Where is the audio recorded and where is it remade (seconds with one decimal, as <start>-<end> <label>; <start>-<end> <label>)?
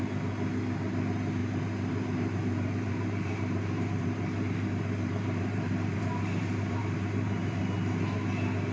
0.0-1.4 recorded; 1.4-6.0 remade; 6.0-6.4 recorded; 6.4-7.6 remade; 7.6-8.7 recorded